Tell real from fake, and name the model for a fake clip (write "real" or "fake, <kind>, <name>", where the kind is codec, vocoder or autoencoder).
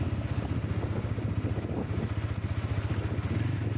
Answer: real